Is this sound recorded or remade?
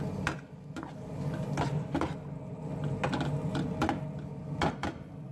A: recorded